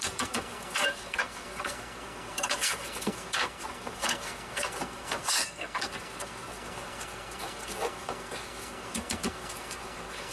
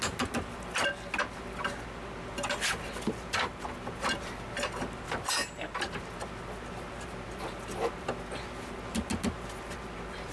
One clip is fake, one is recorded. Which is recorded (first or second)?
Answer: second